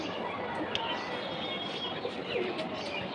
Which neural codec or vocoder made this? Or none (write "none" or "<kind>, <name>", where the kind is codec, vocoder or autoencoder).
none